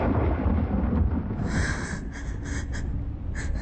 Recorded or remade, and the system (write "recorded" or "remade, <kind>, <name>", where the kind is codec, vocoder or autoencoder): recorded